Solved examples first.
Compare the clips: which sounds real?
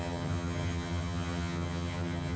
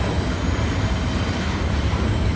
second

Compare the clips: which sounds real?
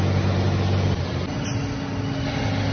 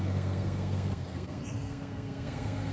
first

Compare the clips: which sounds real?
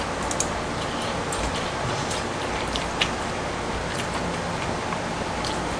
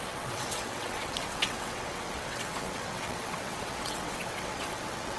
first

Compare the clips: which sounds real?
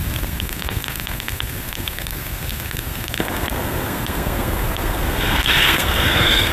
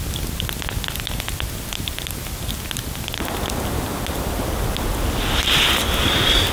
second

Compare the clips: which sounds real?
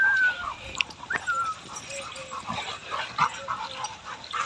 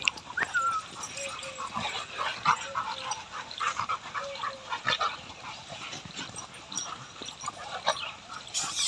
second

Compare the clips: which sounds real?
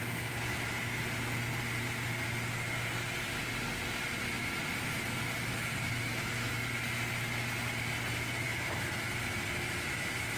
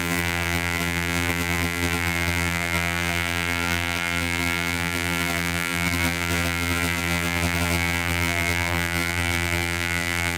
first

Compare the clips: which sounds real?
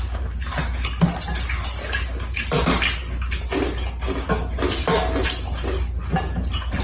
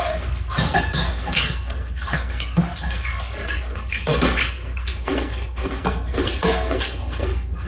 first